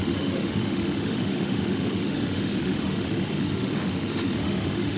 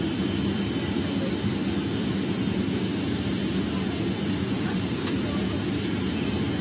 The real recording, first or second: second